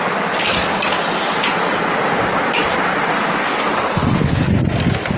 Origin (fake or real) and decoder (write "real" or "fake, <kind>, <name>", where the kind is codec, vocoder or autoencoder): real